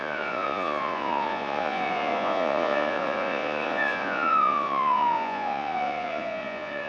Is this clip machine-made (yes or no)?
yes